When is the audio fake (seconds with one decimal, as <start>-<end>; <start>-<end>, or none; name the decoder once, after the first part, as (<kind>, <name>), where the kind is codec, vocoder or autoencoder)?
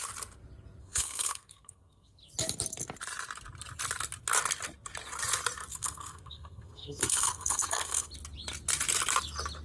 0.8-2.2 (codec, SNAC); 5.7-8.1